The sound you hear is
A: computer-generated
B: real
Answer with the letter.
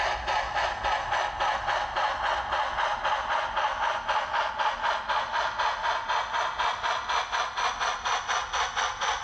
B